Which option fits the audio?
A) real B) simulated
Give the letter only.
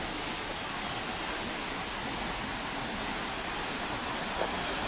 A